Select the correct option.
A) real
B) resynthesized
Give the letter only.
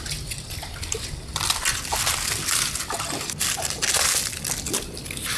A